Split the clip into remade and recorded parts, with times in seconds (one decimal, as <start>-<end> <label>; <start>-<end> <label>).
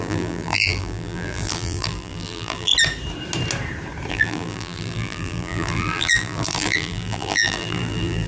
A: 0.0-2.7 remade; 2.7-4.1 recorded; 4.1-8.3 remade